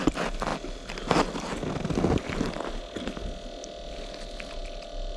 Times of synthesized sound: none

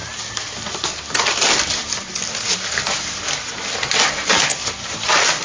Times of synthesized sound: 0.0-3.2 (vocoder, BigVGAN v2); 4.5-5.4

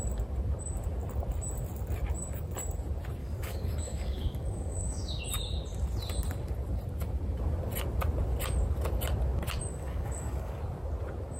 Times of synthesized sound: 3.2-5.2 (codec, DAC); 9.7-10.6

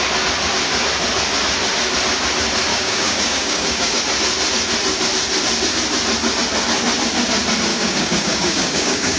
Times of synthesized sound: 2.7-4.0 (codec, DAC); 7.7-9.2

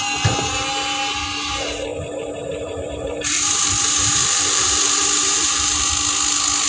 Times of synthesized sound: 1.9-5.9 (vocoder, BigVGAN v2)

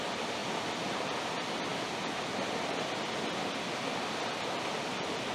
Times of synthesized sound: none